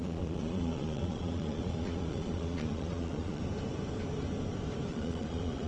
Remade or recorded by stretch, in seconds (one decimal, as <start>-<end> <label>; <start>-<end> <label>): 0.0-3.4 remade; 3.4-4.9 recorded; 4.9-5.7 remade